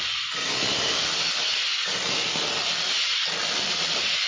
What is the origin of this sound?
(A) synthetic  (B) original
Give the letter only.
B